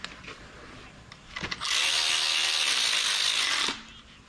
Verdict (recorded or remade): recorded